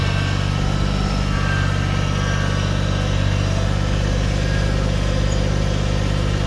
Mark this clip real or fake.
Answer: real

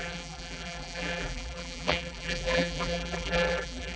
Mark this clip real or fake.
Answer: fake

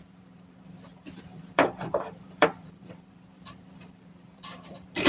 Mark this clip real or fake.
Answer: fake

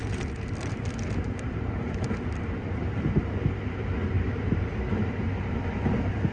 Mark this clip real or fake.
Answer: fake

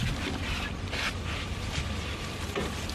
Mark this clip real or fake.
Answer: real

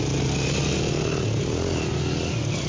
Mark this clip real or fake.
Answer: real